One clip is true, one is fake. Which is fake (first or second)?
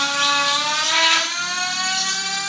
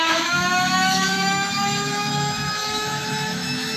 second